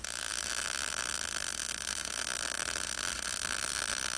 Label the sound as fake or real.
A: real